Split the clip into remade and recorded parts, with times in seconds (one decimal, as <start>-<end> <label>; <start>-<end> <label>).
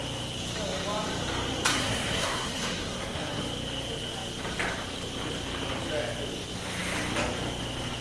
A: 0.0-1.8 recorded; 1.8-3.4 remade; 3.4-8.0 recorded